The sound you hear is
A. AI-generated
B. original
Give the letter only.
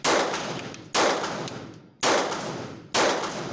B